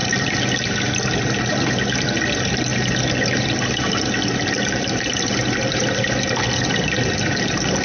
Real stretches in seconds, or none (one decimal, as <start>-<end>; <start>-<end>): 0.0-7.8